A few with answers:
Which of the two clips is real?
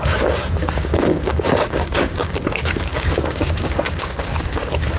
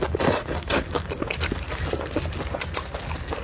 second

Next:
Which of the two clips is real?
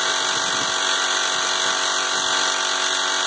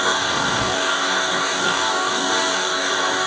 first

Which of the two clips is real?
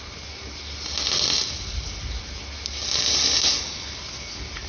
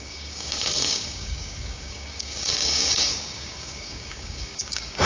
first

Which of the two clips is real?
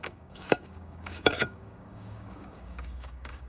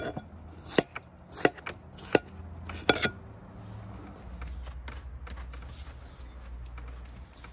second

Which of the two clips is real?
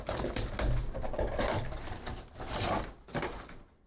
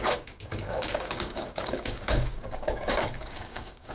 first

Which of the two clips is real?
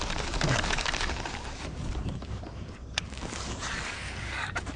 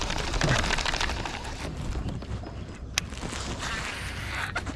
second